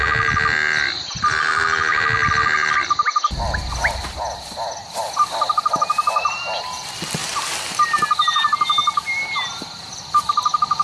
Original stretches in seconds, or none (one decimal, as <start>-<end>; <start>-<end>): 0.0-3.8; 5.0-10.8